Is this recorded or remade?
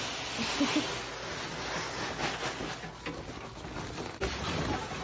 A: recorded